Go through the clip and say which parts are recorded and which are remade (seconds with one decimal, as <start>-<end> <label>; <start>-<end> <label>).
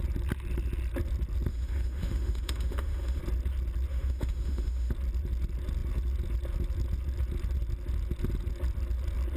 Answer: 0.0-1.5 recorded; 1.5-3.2 remade; 3.2-3.9 recorded; 3.9-4.9 remade; 4.9-9.4 recorded